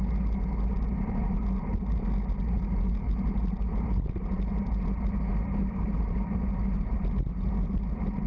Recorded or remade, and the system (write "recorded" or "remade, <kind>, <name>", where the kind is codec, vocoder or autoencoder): recorded